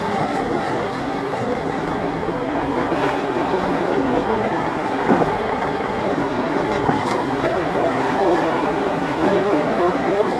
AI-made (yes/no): yes